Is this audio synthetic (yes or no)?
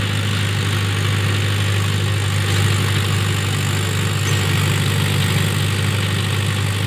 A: no